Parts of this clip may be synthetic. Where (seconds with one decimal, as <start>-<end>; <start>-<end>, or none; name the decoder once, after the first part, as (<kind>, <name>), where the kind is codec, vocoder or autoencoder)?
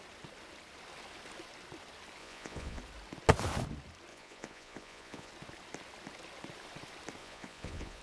2.2-2.8 (vocoder, Vocos); 4.1-5.3; 7.2-8.0